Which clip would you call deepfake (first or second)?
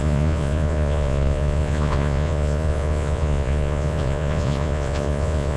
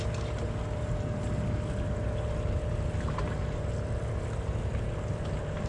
first